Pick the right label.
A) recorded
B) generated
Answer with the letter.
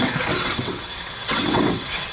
B